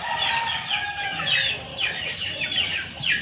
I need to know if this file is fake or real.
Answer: real